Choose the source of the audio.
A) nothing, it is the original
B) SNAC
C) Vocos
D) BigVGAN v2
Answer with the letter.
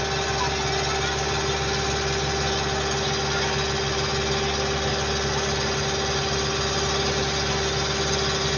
A